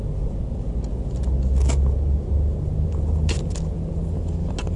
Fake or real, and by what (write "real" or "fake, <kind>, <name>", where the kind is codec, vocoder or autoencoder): real